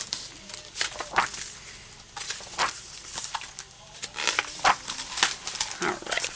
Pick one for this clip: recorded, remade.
recorded